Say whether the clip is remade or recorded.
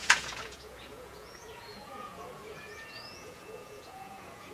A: remade